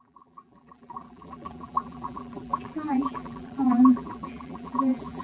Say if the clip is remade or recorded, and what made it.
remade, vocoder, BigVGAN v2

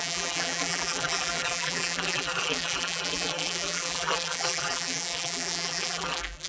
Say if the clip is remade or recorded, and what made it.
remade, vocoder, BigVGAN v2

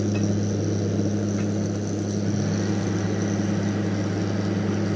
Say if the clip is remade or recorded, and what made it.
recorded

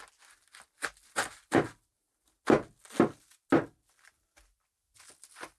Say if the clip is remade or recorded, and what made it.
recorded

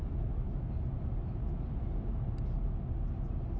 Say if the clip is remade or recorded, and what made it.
recorded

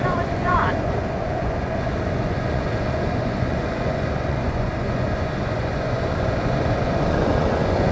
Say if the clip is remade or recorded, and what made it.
remade, vocoder, Vocos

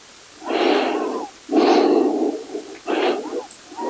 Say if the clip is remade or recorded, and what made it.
recorded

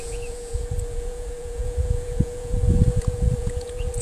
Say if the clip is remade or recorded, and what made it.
remade, vocoder, Vocos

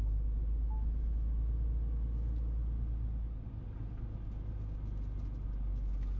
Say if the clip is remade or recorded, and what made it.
recorded